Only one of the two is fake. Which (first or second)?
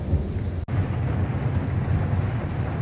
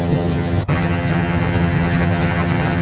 second